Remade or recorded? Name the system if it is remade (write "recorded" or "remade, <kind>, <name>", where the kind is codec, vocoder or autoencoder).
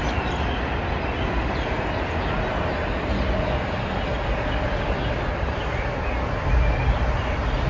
recorded